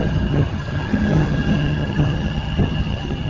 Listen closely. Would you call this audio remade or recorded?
remade